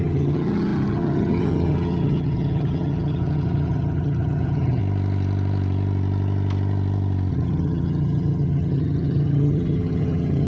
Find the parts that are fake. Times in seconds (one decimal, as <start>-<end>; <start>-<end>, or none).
0.0-4.8; 7.3-10.5

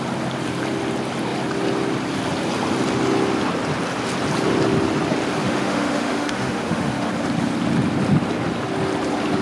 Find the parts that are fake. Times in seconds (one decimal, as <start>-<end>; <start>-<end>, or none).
5.4-7.1